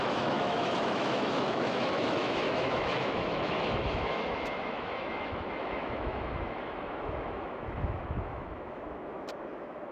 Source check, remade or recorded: remade